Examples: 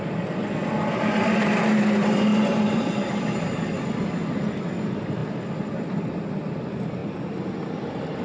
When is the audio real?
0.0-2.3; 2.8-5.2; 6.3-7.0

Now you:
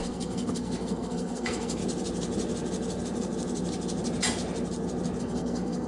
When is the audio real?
1.8-5.2

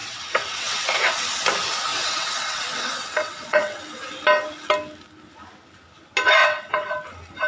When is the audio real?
1.2-1.9; 3.8-6.4; 6.9-7.5

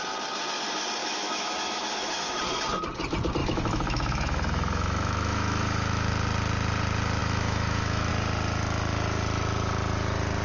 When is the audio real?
0.0-1.0; 2.4-3.4; 6.1-7.2; 8.1-10.4

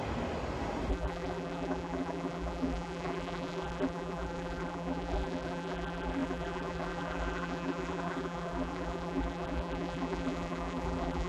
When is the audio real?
0.0-0.9